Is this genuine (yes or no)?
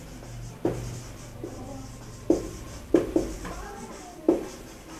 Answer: yes